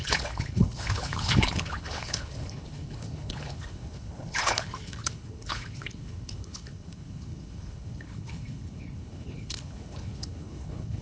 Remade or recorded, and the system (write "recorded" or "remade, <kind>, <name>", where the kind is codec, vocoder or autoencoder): remade, codec, HILCodec